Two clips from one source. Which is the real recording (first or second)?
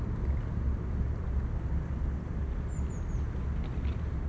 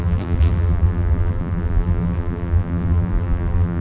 first